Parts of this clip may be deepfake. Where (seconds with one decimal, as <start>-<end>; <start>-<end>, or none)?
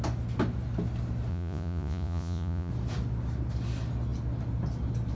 1.3-2.7